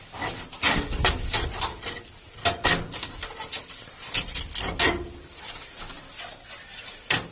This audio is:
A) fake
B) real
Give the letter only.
B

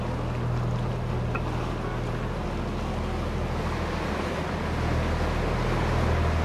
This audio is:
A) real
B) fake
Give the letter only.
A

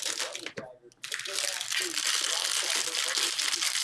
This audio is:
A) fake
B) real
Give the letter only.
B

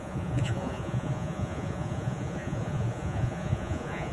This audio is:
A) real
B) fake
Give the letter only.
B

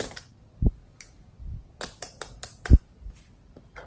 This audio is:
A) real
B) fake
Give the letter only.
A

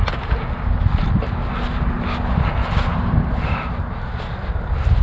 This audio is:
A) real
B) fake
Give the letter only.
A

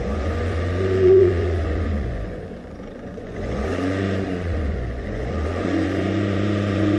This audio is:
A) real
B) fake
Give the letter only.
B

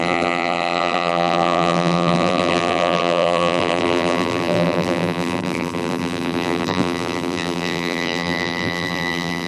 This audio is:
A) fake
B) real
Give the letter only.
A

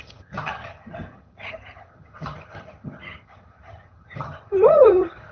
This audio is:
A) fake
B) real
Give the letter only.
A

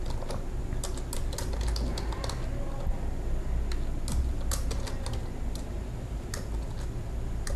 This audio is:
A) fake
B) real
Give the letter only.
B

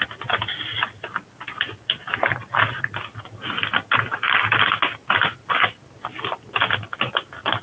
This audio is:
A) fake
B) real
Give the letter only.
B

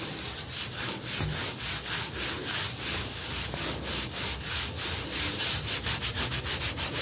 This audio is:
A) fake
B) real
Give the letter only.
B